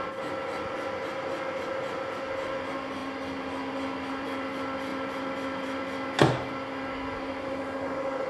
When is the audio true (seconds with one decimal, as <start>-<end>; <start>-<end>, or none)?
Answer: 0.0-8.3